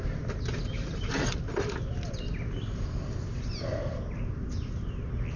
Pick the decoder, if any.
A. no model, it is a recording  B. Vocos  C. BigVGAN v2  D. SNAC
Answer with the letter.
A